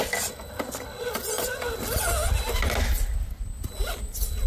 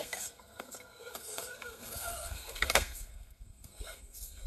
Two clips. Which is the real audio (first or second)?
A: first